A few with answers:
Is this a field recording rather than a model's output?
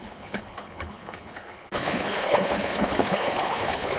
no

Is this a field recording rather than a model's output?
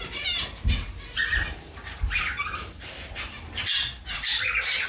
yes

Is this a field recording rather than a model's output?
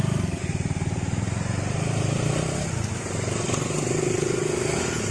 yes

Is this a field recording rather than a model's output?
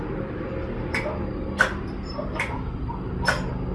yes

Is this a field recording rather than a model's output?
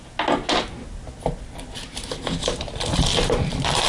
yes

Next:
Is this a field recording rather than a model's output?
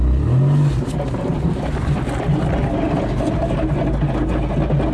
yes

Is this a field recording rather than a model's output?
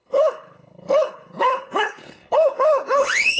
no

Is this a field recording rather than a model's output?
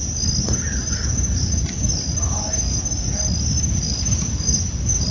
yes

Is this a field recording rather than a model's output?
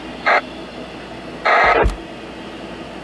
yes